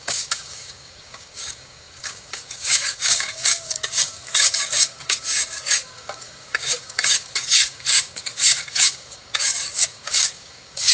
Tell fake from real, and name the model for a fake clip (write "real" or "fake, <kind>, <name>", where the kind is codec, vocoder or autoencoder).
fake, codec, DAC